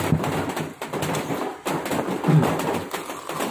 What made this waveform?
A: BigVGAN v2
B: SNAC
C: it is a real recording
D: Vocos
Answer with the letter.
C